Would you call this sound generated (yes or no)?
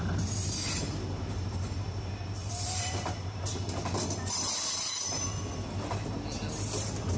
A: no